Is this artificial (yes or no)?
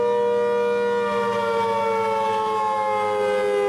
no